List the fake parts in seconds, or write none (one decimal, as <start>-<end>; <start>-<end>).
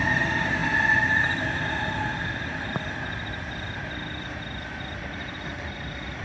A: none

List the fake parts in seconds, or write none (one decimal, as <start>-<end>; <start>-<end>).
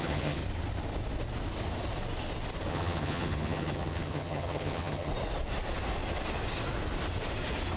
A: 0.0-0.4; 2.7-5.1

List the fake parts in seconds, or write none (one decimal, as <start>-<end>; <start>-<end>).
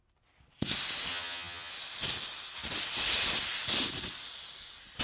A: 1.1-1.7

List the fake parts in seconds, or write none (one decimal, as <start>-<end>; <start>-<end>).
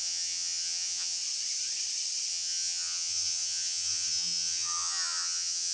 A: 0.0-1.2; 2.3-5.7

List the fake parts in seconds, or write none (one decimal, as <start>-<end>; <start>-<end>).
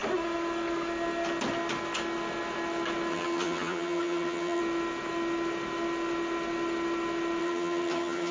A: 3.1-4.6; 7.4-8.3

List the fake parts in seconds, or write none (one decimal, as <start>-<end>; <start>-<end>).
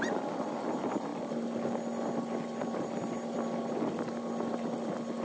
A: none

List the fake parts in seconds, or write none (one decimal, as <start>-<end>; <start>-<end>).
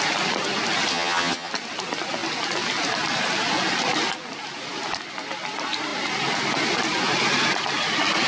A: 0.9-1.5